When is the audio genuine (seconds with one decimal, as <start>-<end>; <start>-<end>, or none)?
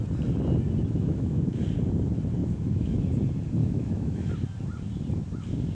0.0-0.8; 1.6-2.4; 3.0-3.6; 4.3-5.7